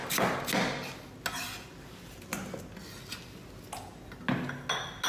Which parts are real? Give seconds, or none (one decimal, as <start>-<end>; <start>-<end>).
0.0-1.3; 2.3-5.1